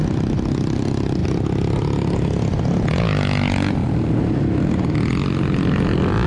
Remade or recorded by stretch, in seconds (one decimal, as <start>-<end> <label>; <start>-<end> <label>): 0.0-6.3 recorded